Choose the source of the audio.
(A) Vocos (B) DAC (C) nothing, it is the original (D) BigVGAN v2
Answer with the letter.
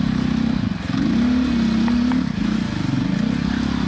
C